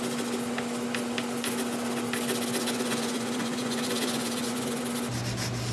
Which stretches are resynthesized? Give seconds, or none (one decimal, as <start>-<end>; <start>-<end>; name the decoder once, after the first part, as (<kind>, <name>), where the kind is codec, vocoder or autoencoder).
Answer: 2.6-4.8 (vocoder, Vocos)